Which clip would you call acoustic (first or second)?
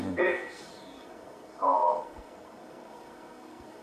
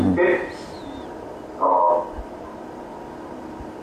second